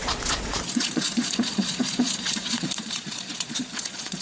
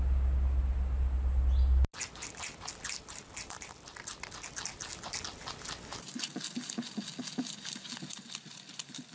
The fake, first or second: first